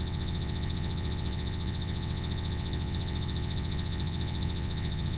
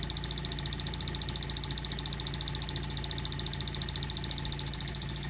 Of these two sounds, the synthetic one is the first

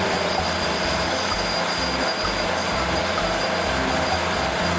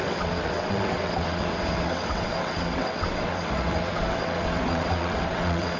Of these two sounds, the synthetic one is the second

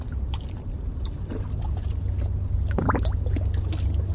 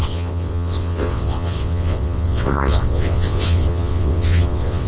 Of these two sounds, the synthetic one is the second